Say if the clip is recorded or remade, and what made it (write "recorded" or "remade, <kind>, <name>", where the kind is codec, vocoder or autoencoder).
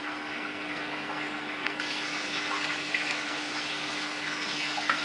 remade, codec, SNAC